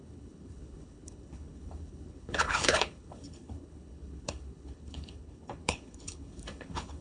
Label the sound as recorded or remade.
remade